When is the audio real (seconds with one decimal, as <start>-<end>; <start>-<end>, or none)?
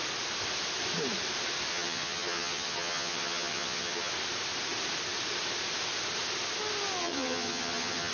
0.0-1.7; 4.1-7.0